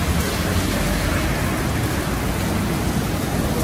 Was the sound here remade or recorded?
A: recorded